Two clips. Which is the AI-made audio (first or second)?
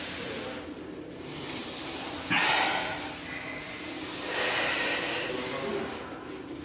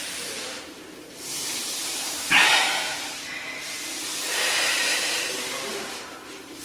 second